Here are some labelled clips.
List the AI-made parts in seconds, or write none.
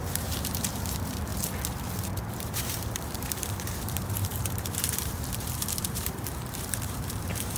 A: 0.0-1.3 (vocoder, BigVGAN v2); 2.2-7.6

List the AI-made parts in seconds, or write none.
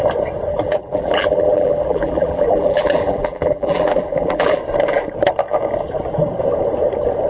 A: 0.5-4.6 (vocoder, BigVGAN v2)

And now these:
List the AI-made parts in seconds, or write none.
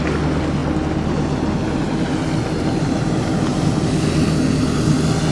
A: none